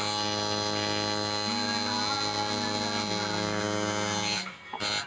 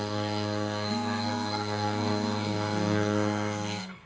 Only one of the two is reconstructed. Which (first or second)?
second